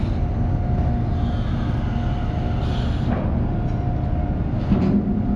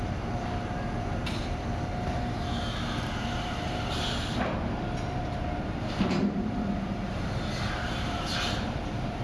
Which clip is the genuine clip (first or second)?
first